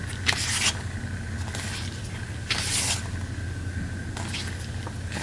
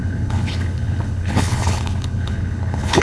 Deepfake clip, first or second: second